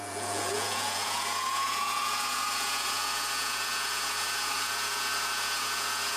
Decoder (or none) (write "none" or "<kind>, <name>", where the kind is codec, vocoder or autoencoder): vocoder, Vocos